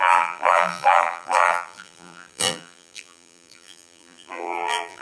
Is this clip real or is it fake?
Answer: fake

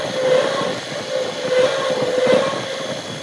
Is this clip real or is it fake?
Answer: real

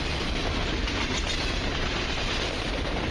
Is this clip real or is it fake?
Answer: fake